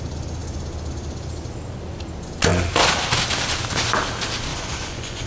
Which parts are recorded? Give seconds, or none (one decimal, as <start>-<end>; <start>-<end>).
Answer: 0.0-4.5